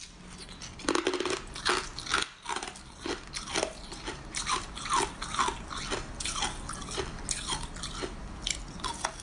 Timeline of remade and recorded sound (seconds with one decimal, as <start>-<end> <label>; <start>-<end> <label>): 0.0-6.8 recorded; 6.8-7.6 remade; 7.6-9.2 recorded